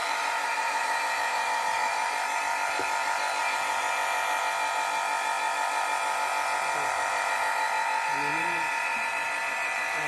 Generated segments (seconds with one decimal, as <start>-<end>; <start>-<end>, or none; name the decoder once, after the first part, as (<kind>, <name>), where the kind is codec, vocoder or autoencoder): 0.0-2.4 (vocoder, BigVGAN v2); 8.3-10.1